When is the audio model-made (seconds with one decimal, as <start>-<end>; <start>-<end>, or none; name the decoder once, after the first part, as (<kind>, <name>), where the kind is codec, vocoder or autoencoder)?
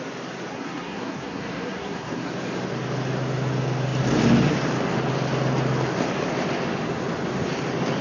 0.5-2.3 (codec, SNAC)